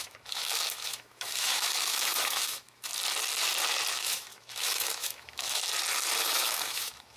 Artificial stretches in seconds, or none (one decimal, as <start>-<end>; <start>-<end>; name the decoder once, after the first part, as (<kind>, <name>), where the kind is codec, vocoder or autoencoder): 0.0-2.9 (autoencoder, DAC-VAE); 3.9-5.6; 6.2-7.2